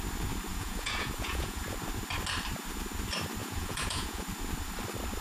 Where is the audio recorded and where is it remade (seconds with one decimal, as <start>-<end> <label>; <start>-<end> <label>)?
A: 0.0-0.5 recorded; 0.5-1.6 remade; 1.6-3.4 recorded; 3.4-4.2 remade; 4.2-5.2 recorded